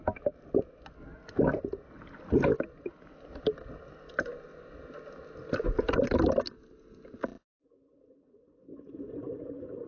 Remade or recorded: recorded